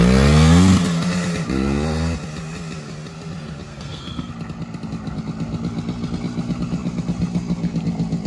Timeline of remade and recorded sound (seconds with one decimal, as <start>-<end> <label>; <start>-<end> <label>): 0.0-3.7 recorded; 3.7-4.3 remade; 4.3-8.3 recorded